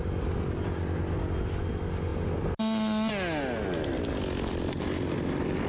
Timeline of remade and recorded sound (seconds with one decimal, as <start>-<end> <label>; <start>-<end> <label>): 0.0-5.7 recorded